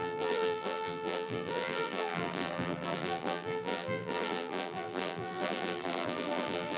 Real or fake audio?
fake